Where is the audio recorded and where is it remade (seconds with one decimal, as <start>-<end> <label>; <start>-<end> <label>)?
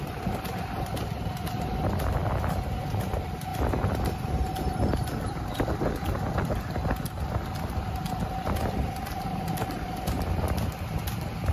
0.0-11.5 recorded